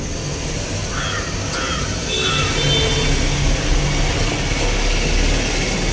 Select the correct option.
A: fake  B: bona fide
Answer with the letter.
B